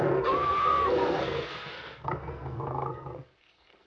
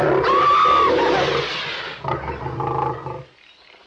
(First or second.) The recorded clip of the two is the second